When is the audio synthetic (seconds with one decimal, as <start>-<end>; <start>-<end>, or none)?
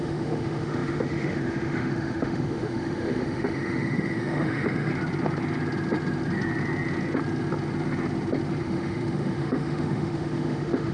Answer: 0.0-4.9; 8.6-10.9